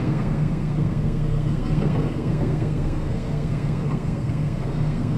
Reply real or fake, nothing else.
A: fake